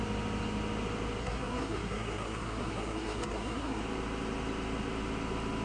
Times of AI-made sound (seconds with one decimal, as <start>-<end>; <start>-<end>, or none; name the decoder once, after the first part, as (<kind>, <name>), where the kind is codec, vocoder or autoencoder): 1.2-3.8 (codec, SNAC)